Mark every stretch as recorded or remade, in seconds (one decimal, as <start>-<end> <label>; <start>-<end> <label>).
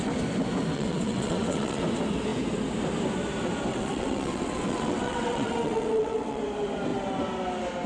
0.0-0.7 recorded; 0.7-1.8 remade; 1.8-3.7 recorded; 3.7-6.4 remade; 6.4-7.9 recorded